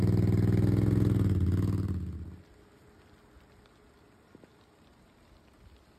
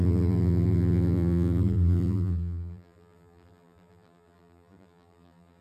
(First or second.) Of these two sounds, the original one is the first